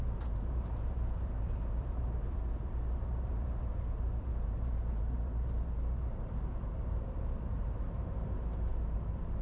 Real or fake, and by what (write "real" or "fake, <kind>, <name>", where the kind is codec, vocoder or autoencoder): fake, vocoder, BigVGAN v2